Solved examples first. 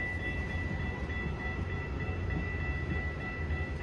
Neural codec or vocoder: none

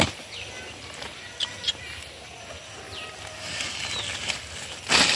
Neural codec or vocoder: none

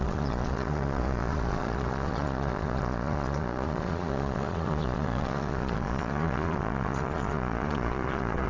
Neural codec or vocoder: vocoder, Vocos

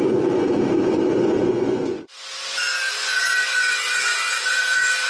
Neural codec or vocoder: vocoder, Vocos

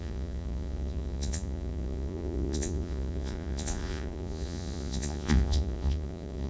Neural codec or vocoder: vocoder, Vocos